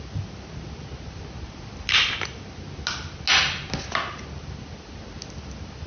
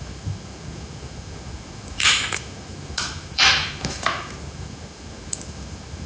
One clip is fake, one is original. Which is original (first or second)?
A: first